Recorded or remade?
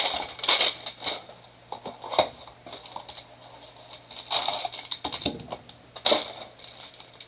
recorded